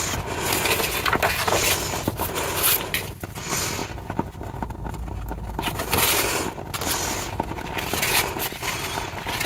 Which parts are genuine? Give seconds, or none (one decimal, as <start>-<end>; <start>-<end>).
0.0-9.5